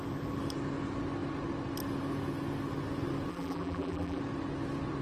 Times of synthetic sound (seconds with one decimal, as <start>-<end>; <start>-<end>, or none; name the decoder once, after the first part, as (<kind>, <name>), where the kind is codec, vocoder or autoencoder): 3.3-4.2 (vocoder, BigVGAN v2)